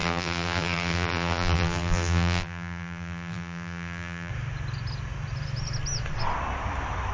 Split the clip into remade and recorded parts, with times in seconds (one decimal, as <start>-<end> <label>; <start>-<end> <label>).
0.0-4.3 remade; 4.3-7.1 recorded